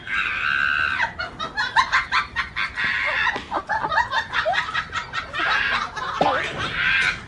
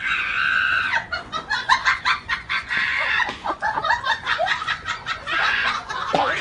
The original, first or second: first